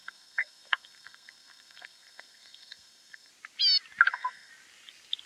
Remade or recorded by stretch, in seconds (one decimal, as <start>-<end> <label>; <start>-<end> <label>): 0.0-3.3 remade; 3.3-4.1 recorded; 4.1-4.5 remade; 4.5-5.3 recorded